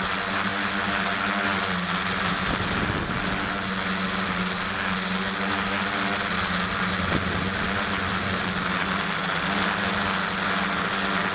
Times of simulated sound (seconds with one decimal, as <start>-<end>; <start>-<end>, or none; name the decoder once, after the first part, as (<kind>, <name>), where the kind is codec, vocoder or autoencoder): none